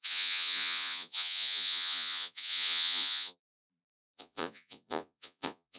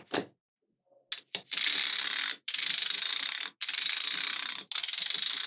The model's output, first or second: first